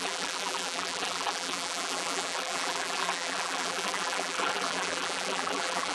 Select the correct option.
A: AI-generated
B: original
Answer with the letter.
A